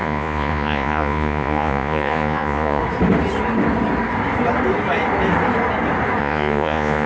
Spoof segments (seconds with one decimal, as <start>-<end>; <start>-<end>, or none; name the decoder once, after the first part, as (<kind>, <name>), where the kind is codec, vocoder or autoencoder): 0.0-2.8 (vocoder, Vocos); 6.2-7.1